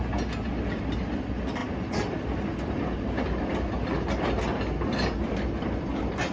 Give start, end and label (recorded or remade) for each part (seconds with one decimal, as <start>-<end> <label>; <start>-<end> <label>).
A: 0.0-6.3 recorded